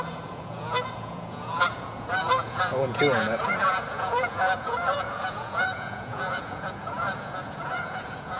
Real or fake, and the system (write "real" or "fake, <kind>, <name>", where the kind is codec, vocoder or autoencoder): fake, vocoder, Vocos